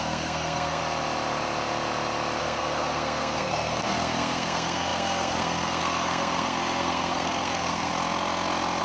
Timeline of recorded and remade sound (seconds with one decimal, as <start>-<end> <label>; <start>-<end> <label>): 0.0-0.8 remade; 0.8-2.4 recorded; 2.4-7.9 remade; 7.9-8.8 recorded